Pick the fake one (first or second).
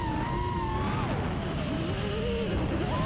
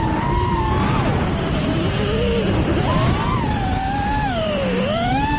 second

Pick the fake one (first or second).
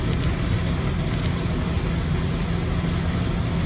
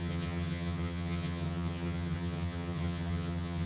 second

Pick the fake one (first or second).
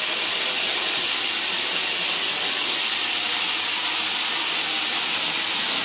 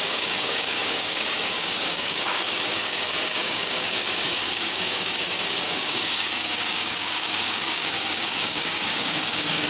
second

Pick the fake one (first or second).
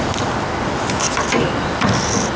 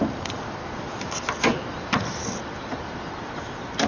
second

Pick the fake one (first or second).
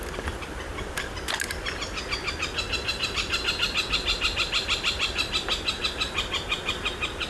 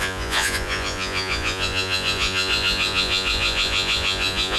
second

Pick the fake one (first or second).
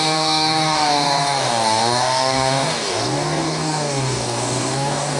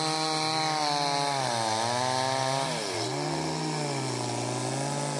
first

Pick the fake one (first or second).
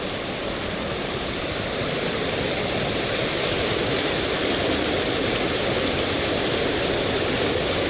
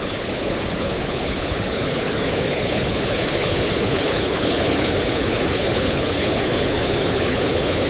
second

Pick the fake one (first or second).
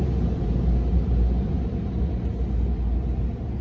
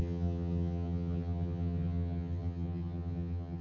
second